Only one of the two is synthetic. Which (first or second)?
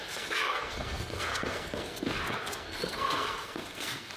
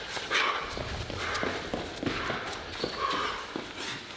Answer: first